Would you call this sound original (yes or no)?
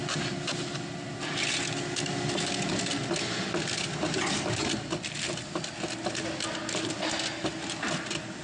yes